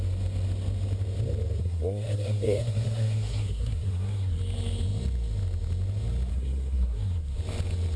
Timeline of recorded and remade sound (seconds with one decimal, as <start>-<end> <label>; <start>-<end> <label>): 0.0-1.6 recorded; 1.6-4.4 remade; 4.4-6.3 recorded; 6.3-7.4 remade; 7.4-8.0 recorded